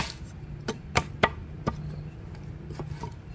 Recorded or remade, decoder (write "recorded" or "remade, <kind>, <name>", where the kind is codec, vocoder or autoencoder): recorded